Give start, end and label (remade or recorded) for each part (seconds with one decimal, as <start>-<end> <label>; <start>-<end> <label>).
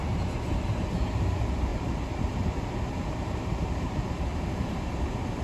0.0-1.7 recorded; 1.7-3.5 remade; 3.5-4.3 recorded; 4.3-5.0 remade; 5.0-5.4 recorded